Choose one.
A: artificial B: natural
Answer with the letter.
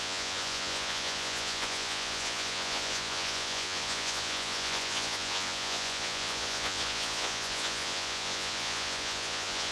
A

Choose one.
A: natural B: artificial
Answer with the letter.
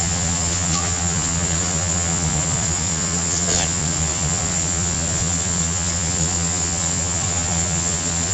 B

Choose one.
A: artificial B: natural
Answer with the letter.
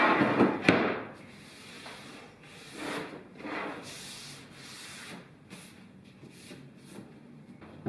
B